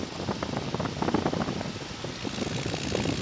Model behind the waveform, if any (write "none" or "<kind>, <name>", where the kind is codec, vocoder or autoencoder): none